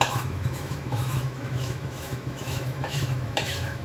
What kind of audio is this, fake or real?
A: fake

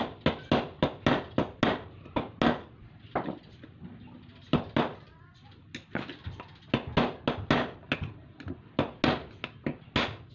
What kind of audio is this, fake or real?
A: real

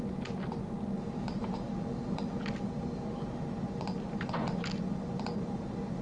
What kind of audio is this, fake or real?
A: real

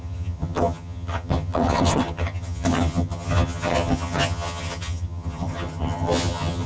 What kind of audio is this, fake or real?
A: fake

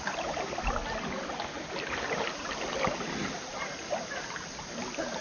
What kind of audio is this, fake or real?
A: real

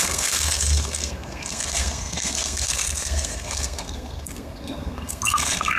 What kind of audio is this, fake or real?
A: fake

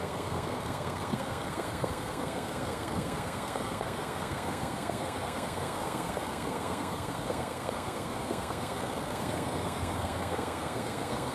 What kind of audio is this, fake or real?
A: fake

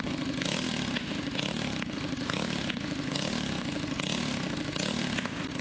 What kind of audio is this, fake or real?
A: real